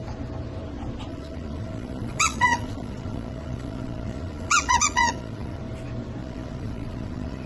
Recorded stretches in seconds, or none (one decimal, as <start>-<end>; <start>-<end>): 0.0-1.1; 5.6-6.2